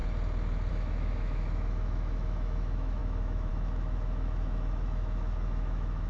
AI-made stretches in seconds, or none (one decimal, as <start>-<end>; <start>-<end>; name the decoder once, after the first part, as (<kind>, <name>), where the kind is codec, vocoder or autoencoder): 0.7-6.1 (autoencoder, DAC-VAE)